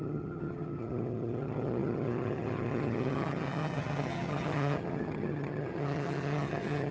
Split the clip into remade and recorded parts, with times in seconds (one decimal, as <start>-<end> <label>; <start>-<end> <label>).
0.0-6.9 remade